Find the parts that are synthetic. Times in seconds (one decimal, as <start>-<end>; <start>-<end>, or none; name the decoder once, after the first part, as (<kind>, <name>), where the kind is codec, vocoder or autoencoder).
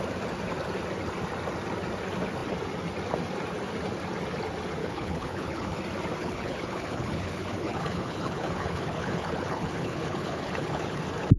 4.8-5.8 (codec, HILCodec); 6.2-11.0